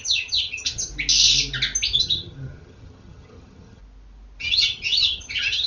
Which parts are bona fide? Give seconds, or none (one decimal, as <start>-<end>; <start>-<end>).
0.9-2.0; 3.8-4.4